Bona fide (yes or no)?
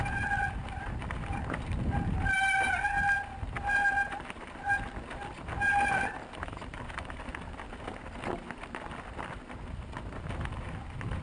yes